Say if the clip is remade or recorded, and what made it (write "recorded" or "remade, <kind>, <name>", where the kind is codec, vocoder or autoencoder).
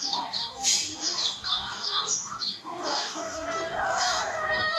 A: remade, codec, DAC